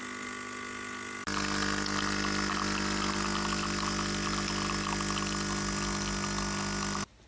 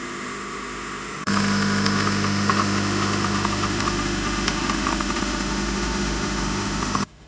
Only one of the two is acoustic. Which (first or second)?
first